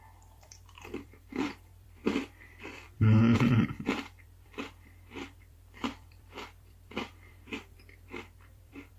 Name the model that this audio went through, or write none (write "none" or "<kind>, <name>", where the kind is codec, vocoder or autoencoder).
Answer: vocoder, BigVGAN v2